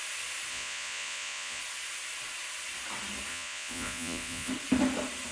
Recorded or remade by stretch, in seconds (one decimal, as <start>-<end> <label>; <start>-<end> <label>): 0.0-0.5 recorded; 0.5-1.6 remade; 1.6-3.3 recorded; 3.3-4.5 remade; 4.5-5.3 recorded